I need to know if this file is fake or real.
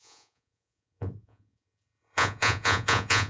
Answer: fake